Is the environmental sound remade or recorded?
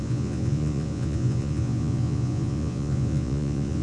remade